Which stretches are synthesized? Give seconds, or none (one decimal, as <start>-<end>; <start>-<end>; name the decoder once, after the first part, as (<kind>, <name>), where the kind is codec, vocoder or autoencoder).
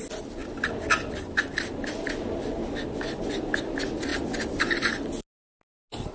none